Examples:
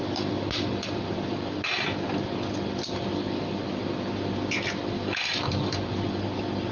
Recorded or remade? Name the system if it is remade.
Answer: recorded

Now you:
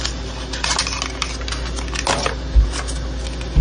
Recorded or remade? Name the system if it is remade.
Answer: recorded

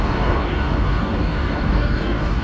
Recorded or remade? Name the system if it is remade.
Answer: remade, codec, DAC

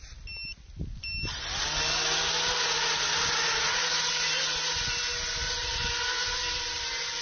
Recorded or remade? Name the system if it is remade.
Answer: recorded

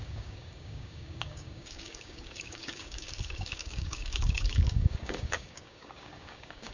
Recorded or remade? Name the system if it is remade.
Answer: remade, codec, DAC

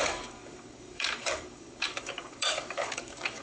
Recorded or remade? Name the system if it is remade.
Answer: remade, codec, DAC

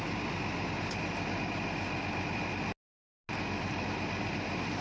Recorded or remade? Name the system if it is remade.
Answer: recorded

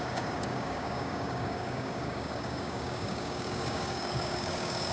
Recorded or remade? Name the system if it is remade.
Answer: remade, codec, DAC